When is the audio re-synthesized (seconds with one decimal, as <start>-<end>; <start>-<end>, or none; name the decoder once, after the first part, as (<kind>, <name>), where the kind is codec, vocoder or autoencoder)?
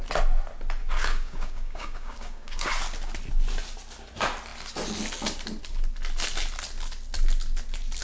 0.8-2.7 (codec, DAC)